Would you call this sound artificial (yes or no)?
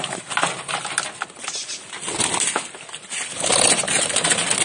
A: no